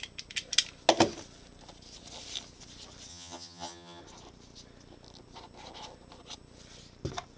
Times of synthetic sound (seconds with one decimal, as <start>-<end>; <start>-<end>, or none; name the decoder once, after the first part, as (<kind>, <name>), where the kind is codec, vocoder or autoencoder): 3.1-4.0 (vocoder, HiFi-GAN)